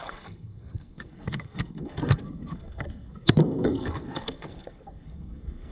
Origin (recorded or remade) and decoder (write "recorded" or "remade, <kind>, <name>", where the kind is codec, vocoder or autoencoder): remade, codec, SNAC